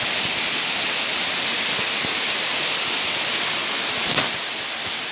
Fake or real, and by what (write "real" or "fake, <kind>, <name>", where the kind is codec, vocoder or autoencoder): real